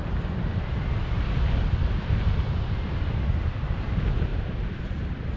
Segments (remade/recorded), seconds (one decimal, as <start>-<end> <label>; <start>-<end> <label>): 0.0-3.2 recorded; 3.2-5.4 remade